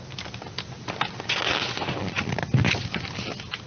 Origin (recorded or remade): recorded